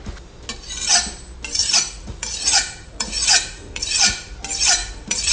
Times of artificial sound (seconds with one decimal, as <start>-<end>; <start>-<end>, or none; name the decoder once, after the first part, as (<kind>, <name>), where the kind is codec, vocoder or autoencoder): 1.6-4.3 (vocoder, Vocos); 4.8-5.3